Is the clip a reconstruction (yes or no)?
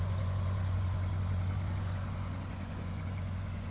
yes